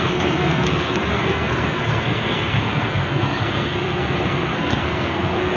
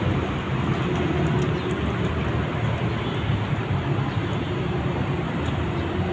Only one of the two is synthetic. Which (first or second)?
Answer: first